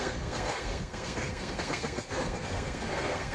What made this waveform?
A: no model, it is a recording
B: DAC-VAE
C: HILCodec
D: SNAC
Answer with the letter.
D